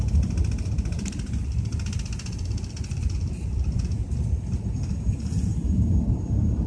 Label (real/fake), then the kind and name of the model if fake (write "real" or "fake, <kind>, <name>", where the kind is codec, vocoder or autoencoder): real